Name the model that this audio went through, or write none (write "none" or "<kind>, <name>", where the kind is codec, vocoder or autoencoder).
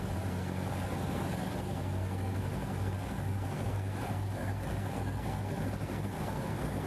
codec, SNAC